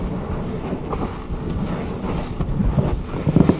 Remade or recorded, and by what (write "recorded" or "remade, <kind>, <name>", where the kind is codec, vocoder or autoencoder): recorded